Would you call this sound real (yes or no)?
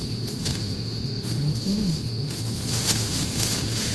no